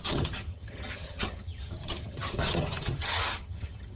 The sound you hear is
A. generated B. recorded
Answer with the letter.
A